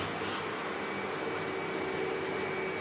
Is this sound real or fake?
real